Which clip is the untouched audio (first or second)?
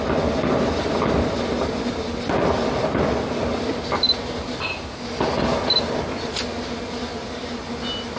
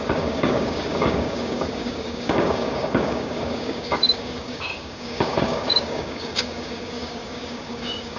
first